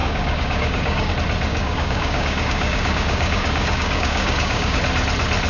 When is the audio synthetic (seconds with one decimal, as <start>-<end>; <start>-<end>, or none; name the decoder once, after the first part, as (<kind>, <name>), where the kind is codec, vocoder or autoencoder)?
0.0-1.1 (codec, DAC); 1.5-4.8